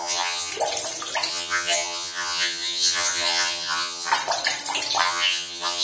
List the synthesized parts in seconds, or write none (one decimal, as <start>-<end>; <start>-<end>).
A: 0.0-0.5; 1.3-4.1; 5.0-5.8

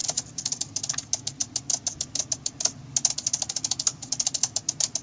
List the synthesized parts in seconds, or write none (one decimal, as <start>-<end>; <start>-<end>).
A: none

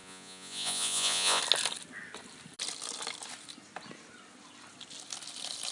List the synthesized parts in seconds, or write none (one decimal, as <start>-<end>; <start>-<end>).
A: 0.0-1.4